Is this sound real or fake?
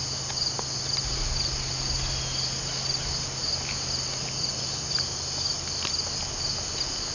real